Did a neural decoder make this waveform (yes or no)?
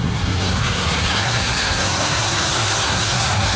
yes